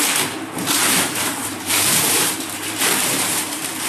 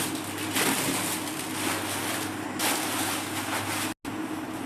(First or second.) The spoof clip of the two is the first